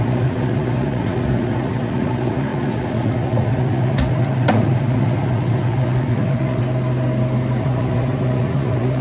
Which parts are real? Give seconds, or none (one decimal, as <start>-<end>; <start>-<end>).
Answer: 6.6-7.6